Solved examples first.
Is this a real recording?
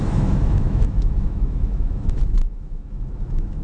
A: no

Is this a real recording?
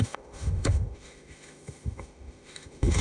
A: no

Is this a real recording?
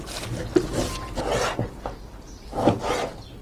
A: yes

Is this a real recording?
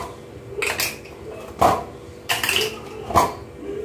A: yes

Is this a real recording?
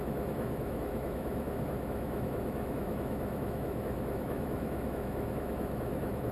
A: no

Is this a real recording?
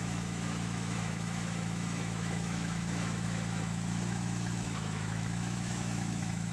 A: no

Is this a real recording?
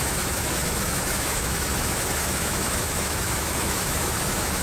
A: no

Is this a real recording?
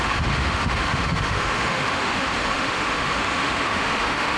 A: no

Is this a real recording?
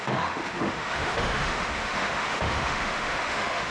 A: no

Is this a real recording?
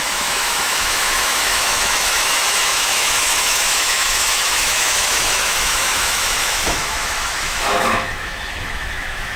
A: no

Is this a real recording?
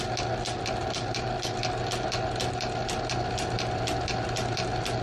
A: yes